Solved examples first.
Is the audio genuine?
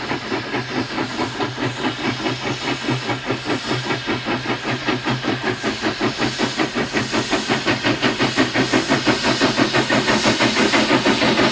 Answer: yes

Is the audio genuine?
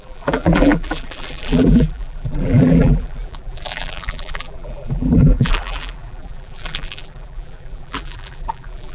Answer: no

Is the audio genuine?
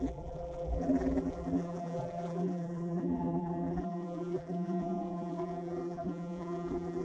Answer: no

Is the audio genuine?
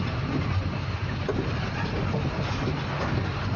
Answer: yes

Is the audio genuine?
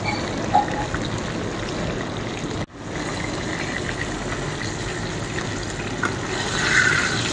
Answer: yes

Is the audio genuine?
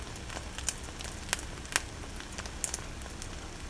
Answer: yes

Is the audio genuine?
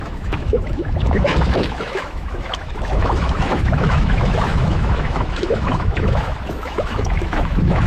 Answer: no